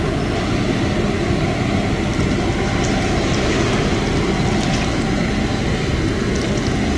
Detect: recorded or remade recorded